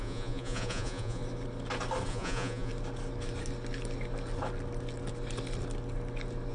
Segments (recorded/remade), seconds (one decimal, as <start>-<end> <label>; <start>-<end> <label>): 0.0-1.2 remade; 1.2-2.1 recorded; 2.1-2.7 remade; 2.7-6.5 recorded